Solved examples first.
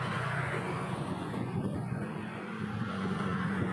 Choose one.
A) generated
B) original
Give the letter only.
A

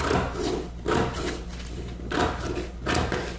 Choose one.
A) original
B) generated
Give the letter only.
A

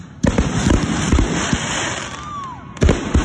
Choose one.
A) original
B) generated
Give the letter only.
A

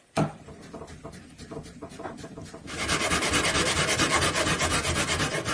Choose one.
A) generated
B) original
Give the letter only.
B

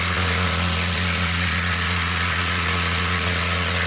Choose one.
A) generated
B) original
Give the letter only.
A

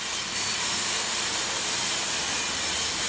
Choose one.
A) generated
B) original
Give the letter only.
B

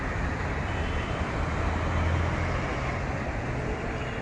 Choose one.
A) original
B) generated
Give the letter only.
A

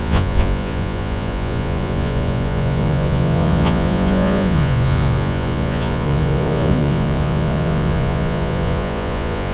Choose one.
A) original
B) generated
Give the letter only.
B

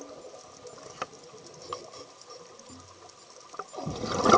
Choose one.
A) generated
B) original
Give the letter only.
B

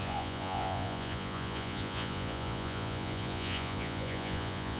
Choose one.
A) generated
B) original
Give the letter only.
A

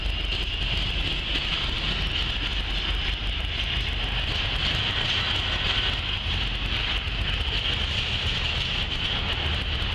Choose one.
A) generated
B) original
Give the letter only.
B